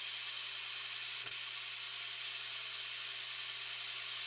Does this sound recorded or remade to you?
recorded